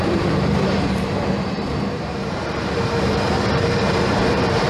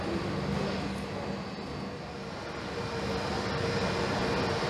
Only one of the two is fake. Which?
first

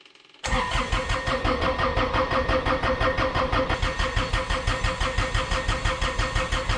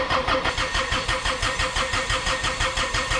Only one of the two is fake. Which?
second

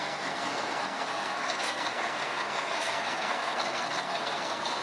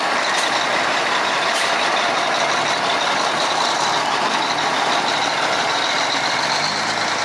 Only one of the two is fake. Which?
first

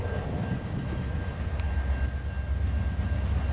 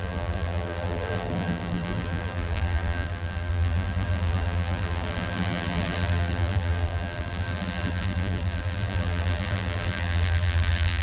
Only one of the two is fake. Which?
second